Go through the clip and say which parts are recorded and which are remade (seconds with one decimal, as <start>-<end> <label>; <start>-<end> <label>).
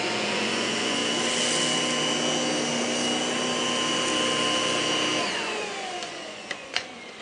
0.0-1.0 remade; 1.0-5.2 recorded; 5.2-7.2 remade